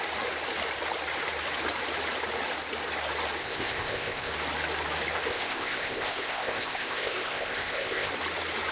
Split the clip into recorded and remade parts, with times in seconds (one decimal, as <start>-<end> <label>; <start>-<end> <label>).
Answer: 0.0-3.4 recorded; 3.4-4.3 remade; 4.3-5.3 recorded; 5.3-8.1 remade; 8.1-8.7 recorded